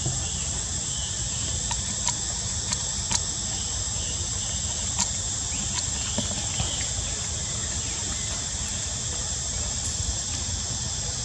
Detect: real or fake real